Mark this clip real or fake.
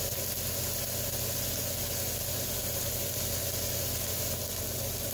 real